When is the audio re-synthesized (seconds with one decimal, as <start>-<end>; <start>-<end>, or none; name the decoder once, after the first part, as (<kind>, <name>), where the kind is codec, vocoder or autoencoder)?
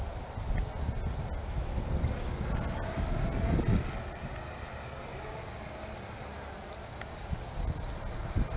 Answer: none